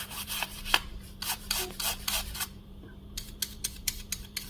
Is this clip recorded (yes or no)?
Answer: no